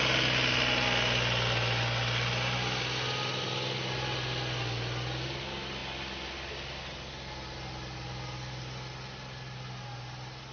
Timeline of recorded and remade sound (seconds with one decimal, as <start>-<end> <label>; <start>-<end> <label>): 0.0-10.5 recorded